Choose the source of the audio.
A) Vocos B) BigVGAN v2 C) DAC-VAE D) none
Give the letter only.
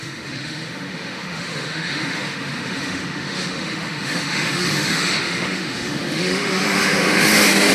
C